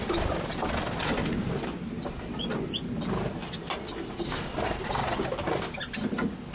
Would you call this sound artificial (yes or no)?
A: no